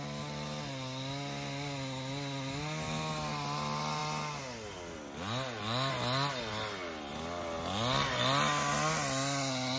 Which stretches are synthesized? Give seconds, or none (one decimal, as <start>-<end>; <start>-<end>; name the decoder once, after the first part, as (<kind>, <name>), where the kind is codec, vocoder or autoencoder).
none